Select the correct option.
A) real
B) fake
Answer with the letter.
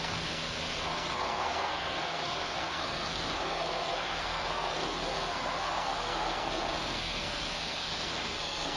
B